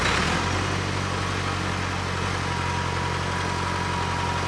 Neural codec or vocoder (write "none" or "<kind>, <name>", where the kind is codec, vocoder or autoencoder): none